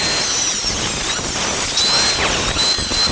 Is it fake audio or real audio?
real